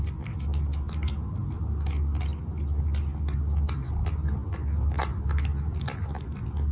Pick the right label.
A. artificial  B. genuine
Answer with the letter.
B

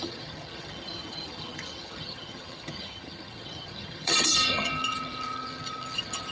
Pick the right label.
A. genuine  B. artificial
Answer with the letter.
B